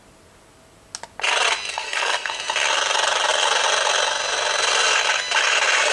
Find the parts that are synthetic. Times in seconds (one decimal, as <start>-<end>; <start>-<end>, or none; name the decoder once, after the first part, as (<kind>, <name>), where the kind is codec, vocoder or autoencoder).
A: 1.7-2.3 (codec, SNAC)